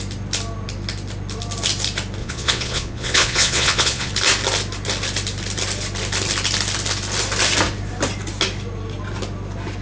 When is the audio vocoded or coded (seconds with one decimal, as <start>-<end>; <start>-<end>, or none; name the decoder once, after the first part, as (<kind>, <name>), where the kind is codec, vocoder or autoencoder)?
2.2-4.1 (vocoder, Vocos)